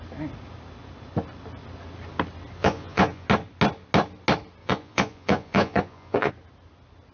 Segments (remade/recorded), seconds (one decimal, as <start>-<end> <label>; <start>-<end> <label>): 0.0-2.6 recorded; 2.6-3.3 remade; 3.3-4.6 recorded; 4.6-6.3 remade; 6.3-7.1 recorded